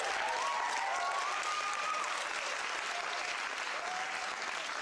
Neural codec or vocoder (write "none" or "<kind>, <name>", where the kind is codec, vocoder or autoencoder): none